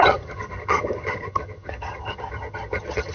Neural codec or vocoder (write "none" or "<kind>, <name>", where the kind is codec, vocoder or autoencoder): vocoder, HiFi-GAN